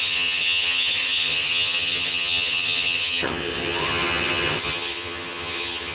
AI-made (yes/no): yes